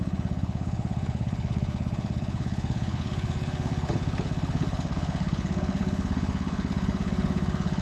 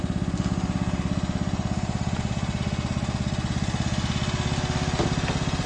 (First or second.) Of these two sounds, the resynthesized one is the first